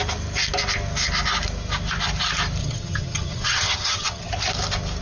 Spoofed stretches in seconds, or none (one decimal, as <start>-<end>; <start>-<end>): 2.6-4.3